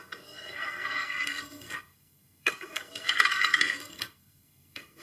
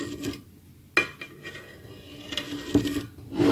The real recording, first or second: second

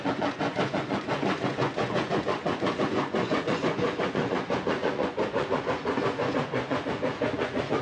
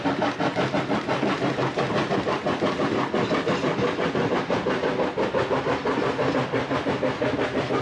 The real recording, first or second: second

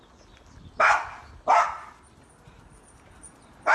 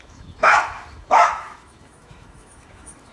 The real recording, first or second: first